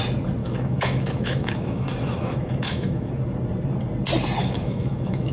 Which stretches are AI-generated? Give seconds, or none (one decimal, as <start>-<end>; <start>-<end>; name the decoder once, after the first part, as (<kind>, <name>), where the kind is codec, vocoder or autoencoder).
0.4-3.1 (autoencoder, DAC-VAE); 4.4-5.3